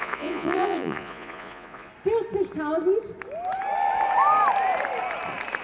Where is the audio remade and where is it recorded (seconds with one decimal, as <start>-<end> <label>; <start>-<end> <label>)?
0.0-1.9 remade; 1.9-5.6 recorded